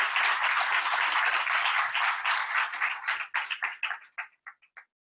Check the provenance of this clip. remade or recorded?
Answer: recorded